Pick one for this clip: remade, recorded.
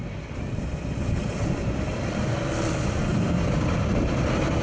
recorded